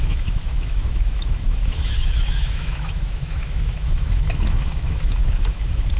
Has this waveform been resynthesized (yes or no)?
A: yes